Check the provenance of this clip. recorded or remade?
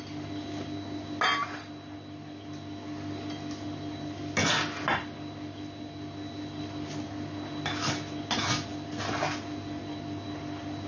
recorded